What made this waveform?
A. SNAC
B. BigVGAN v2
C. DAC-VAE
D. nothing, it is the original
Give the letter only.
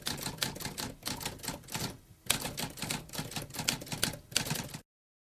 D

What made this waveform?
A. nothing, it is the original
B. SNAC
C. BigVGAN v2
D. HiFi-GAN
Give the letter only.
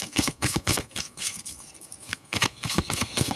B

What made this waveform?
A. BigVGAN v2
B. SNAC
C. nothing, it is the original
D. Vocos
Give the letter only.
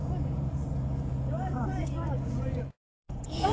D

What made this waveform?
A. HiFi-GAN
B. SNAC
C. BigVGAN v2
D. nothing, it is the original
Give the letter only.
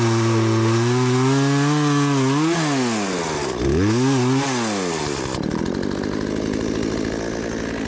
D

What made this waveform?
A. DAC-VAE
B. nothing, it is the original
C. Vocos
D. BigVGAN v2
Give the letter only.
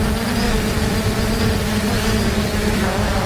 D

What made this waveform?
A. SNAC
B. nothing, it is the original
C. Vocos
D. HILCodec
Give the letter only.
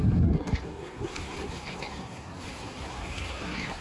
A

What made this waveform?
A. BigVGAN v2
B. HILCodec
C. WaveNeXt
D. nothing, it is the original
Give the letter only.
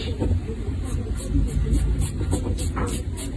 D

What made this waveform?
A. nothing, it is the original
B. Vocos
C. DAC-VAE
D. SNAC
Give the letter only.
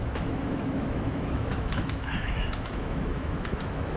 C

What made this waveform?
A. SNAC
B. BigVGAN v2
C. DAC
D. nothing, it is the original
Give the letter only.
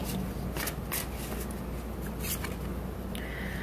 D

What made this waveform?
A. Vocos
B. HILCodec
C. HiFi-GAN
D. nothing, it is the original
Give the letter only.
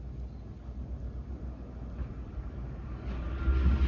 D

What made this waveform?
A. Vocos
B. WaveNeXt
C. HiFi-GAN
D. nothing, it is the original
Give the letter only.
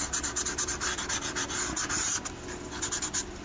D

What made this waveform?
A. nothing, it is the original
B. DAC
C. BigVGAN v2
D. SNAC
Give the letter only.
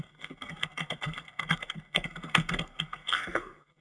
D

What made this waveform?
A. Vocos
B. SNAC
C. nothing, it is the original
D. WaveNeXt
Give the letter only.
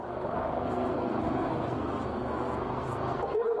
B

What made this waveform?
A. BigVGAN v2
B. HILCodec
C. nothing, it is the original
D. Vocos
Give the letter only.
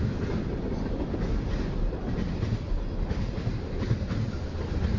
C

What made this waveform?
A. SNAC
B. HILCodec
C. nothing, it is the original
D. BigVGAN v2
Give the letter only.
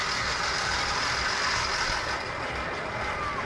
C